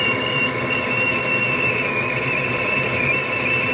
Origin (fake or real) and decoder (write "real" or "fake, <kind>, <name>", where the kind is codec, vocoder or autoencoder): fake, vocoder, BigVGAN v2